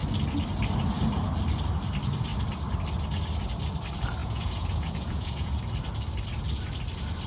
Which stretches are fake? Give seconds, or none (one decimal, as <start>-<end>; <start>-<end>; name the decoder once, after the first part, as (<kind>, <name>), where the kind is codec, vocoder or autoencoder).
4.2-5.6 (vocoder, Vocos)